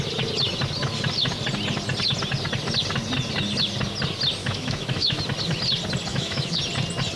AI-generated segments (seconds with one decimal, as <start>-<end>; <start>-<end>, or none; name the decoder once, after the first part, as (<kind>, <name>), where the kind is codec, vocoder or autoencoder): 4.4-5.2 (autoencoder, DAC-VAE); 6.1-6.6

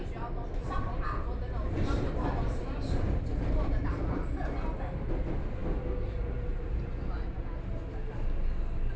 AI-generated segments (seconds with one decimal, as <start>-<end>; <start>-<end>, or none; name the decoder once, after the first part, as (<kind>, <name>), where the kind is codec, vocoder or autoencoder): 0.6-2.1 (vocoder, BigVGAN v2)

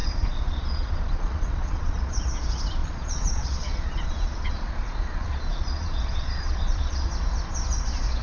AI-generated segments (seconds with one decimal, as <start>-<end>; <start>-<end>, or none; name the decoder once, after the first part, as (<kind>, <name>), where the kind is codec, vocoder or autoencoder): 0.0-2.2 (vocoder, Vocos); 2.8-7.1

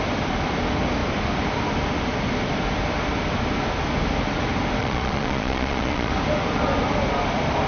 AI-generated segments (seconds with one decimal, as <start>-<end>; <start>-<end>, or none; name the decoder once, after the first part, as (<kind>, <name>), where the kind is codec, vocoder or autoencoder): 4.8-6.1 (vocoder, Vocos)

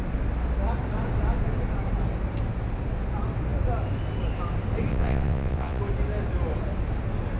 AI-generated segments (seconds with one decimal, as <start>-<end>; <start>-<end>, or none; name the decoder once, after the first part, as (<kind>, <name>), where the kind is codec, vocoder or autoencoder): 4.9-5.8 (vocoder, WaveNeXt)

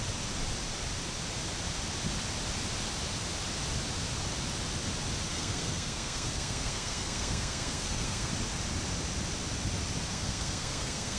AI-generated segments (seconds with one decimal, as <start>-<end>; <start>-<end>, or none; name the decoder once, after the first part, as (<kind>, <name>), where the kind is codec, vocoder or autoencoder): 5.3-8.3 (codec, SNAC); 10.1-11.2

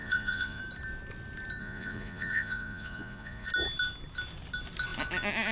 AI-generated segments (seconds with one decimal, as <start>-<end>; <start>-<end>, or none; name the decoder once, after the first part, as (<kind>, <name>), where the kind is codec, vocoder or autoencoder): 0.0-0.6 (vocoder, Vocos); 1.6-3.5